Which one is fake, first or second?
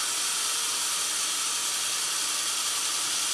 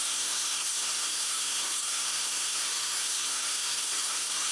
second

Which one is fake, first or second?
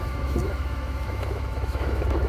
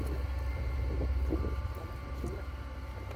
first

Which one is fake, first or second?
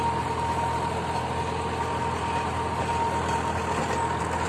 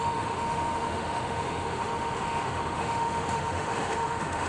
second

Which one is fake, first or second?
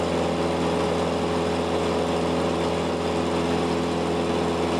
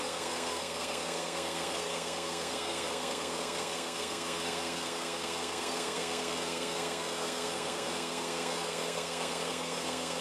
second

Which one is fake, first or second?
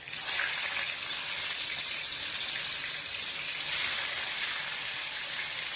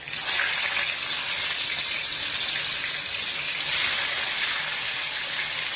first